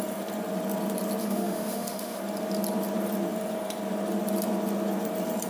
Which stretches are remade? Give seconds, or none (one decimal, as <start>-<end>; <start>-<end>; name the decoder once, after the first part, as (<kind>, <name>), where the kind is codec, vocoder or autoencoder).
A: 1.2-2.2 (autoencoder, DAC-VAE)